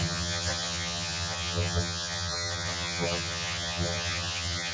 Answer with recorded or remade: remade